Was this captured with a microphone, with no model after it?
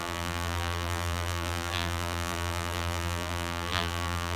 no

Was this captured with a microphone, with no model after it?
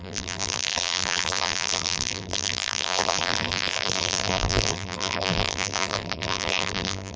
no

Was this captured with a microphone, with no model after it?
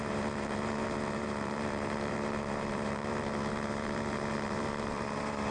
no